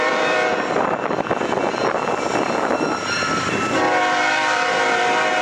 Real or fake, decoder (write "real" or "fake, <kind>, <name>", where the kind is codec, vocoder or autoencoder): fake, vocoder, BigVGAN v2